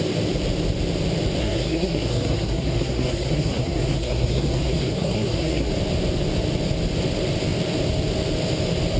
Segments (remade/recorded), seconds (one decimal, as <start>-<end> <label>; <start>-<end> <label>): 0.0-1.4 recorded; 1.4-5.7 remade; 5.7-9.0 recorded

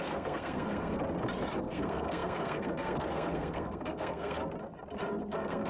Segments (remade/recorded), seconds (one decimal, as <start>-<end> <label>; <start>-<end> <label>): 0.0-0.9 remade; 0.9-1.6 recorded; 1.6-4.4 remade; 4.4-5.3 recorded; 5.3-5.7 remade

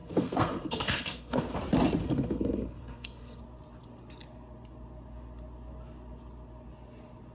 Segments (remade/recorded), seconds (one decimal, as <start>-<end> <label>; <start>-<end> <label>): 0.0-1.6 remade; 1.6-2.0 recorded; 2.0-3.4 remade; 3.4-7.3 recorded

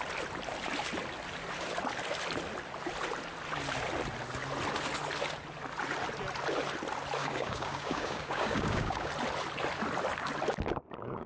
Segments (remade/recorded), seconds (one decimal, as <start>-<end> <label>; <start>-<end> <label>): 0.0-7.2 recorded; 7.2-9.1 remade; 9.1-11.3 recorded

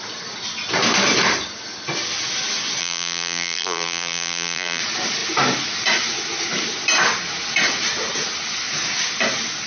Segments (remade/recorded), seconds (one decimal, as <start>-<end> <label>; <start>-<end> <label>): 0.0-2.8 recorded; 2.8-4.8 remade; 4.8-9.7 recorded

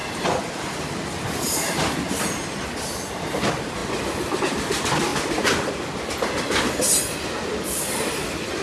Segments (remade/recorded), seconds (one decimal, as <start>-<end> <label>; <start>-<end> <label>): 0.0-8.6 recorded

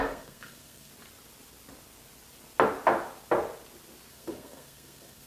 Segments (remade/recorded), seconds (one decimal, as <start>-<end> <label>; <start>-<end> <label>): 0.0-0.9 remade; 0.9-4.1 recorded; 4.1-5.3 remade

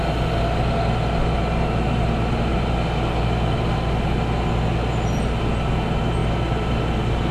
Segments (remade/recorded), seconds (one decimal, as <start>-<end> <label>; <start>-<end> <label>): 0.0-7.3 recorded